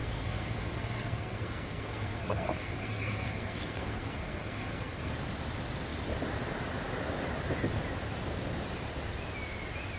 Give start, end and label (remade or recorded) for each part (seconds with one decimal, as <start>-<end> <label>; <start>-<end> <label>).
0.0-5.1 remade; 5.1-10.0 recorded